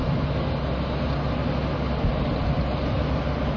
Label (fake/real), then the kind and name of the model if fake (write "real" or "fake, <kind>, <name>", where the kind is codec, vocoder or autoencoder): real